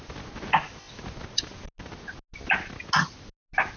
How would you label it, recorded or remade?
recorded